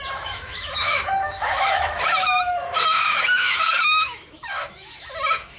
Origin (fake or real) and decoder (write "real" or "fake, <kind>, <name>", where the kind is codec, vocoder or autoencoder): fake, autoencoder, DAC-VAE